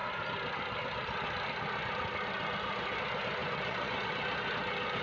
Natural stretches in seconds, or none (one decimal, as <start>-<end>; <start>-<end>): 0.0-3.4; 4.1-5.0